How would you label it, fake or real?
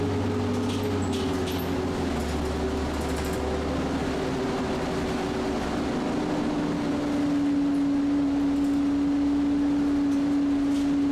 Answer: real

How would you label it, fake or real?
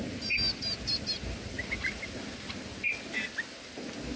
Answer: real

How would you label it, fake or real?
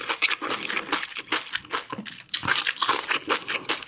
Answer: real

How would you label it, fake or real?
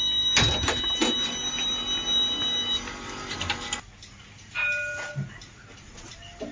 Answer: real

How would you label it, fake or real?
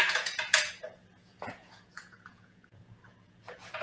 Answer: fake